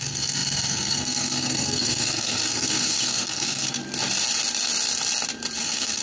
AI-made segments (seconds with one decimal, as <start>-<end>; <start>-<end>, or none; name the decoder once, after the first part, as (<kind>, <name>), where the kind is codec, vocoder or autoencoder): 0.0-3.8 (codec, SNAC); 5.6-6.0